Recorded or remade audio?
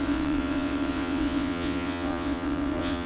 remade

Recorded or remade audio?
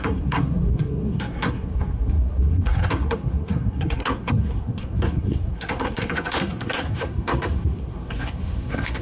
remade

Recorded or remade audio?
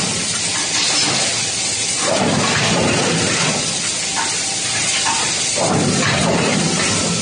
recorded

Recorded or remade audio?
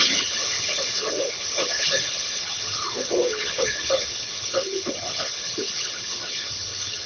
remade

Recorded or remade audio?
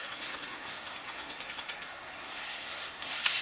remade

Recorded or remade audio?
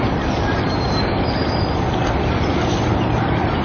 recorded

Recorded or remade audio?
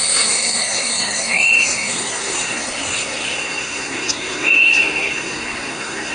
remade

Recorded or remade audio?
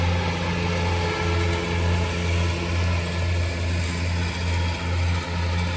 recorded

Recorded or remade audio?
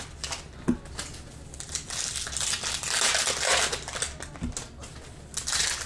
recorded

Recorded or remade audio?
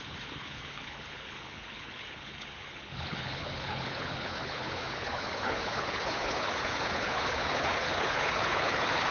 remade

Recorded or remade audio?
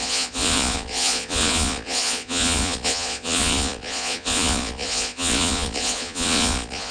remade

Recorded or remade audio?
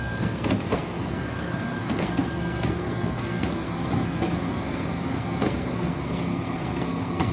remade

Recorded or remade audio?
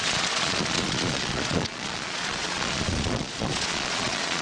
remade